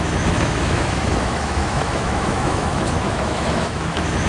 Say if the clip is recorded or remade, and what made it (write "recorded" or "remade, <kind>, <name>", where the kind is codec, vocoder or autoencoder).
remade, autoencoder, DAC-VAE